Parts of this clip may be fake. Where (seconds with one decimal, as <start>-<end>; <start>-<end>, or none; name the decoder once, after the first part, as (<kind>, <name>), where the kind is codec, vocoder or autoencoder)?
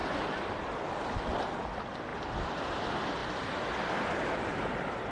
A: 2.1-2.8 (vocoder, BigVGAN v2)